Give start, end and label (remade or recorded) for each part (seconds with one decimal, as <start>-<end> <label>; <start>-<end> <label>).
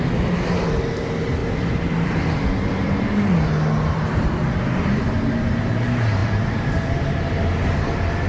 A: 0.0-1.4 recorded; 1.4-5.1 remade; 5.1-6.2 recorded; 6.2-7.4 remade; 7.4-8.3 recorded